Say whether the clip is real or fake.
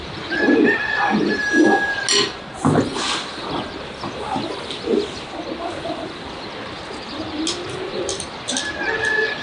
real